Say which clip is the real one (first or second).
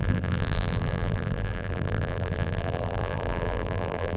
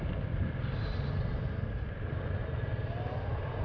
second